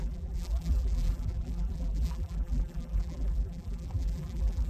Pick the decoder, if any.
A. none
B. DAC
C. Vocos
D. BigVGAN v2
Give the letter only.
D